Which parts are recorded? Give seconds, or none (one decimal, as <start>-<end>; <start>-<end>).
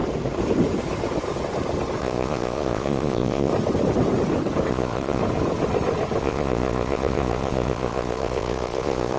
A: 0.0-2.0; 3.5-4.7; 5.2-6.2